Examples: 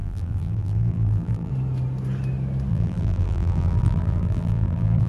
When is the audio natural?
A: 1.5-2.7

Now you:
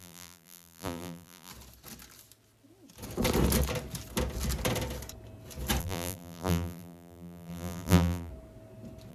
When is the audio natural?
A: 1.5-5.8; 8.3-9.1

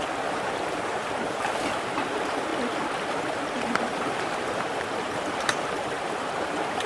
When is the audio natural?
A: 2.5-3.2

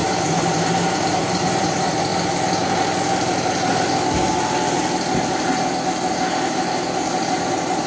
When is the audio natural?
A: 2.1-6.5

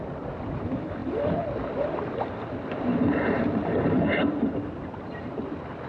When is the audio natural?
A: 0.0-2.9; 4.4-5.9

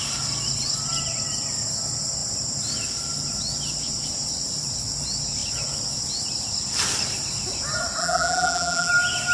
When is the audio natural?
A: 0.0-8.0; 8.9-9.3

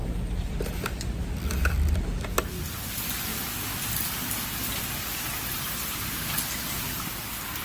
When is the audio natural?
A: 2.5-3.3; 4.8-7.6

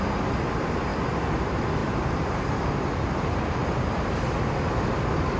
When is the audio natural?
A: 0.0-1.8; 3.1-3.6; 4.3-5.4